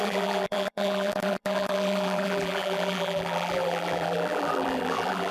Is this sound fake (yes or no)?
yes